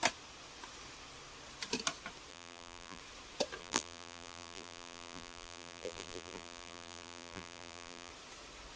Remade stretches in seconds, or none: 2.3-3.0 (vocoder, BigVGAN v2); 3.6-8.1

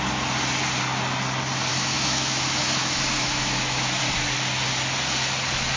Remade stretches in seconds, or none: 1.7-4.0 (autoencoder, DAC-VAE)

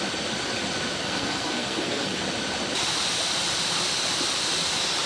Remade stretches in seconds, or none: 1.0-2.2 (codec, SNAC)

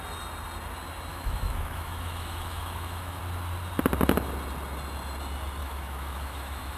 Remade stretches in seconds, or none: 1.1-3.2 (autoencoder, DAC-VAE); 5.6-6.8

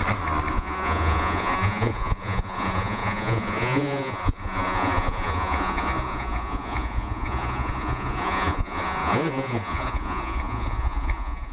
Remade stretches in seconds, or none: 0.5-11.5 (vocoder, Vocos)

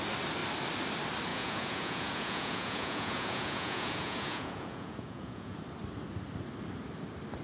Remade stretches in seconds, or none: 1.3-5.6 (vocoder, Vocos)

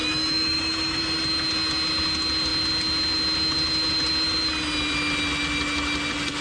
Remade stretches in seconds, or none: 0.0-1.0 (autoencoder, DAC-VAE)